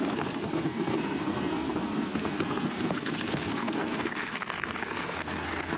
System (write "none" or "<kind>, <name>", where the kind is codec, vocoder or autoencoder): codec, SNAC